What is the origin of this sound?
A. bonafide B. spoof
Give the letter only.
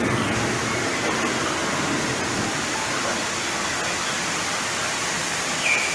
A